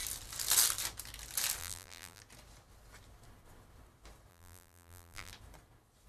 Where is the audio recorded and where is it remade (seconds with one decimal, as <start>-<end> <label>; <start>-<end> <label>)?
0.0-1.6 recorded; 1.6-2.2 remade; 2.2-4.3 recorded; 4.3-5.3 remade; 5.3-6.1 recorded

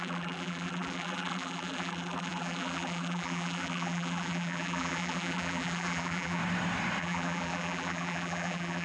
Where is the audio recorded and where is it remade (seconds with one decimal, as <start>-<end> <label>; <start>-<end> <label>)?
0.0-6.4 remade; 6.4-7.0 recorded; 7.0-8.8 remade

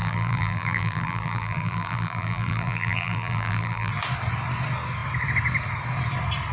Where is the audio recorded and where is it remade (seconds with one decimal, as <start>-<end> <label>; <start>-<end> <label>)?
0.0-3.9 remade; 3.9-6.5 recorded

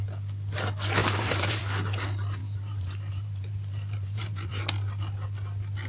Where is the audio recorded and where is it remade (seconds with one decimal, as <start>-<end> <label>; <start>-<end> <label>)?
0.0-1.0 recorded; 1.0-1.6 remade; 1.6-2.4 recorded; 2.4-4.6 remade; 4.6-5.9 recorded